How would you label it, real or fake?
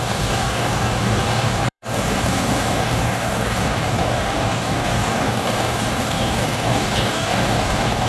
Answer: fake